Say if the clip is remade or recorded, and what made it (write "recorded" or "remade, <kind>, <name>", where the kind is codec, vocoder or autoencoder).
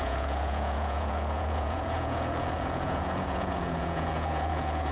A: remade, vocoder, Vocos